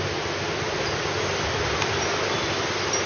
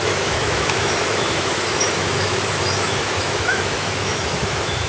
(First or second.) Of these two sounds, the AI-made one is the second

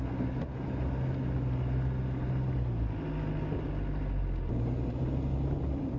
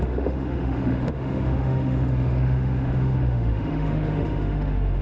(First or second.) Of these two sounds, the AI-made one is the second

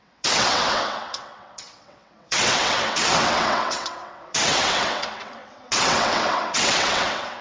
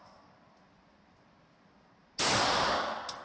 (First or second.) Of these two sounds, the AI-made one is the first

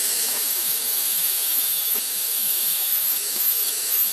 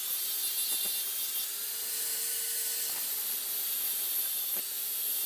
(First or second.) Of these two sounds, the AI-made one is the first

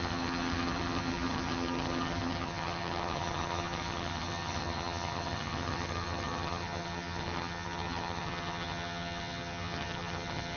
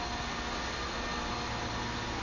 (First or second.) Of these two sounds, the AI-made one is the first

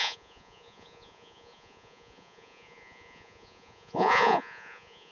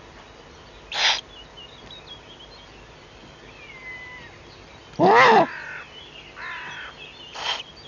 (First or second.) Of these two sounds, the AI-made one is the first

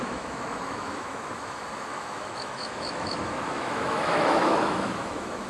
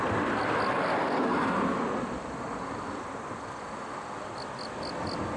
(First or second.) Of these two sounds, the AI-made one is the first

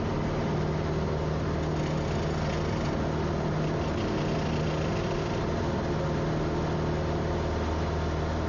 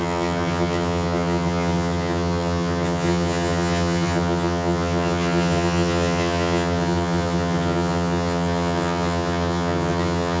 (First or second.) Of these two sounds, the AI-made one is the second